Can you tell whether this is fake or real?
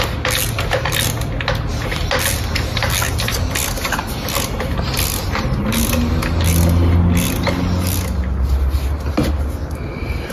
real